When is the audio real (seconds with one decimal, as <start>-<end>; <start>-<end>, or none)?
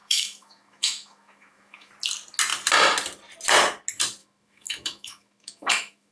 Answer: 1.9-4.2